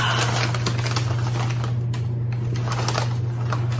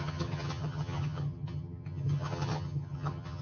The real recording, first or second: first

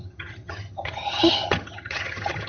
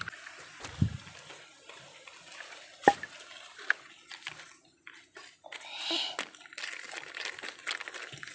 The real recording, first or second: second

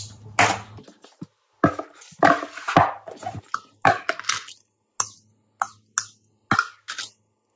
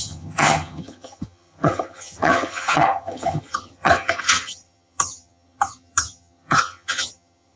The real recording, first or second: first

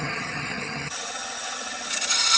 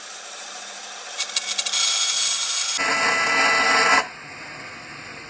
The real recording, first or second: second